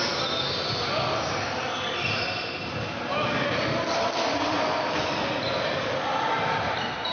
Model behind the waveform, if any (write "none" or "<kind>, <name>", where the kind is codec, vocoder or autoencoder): none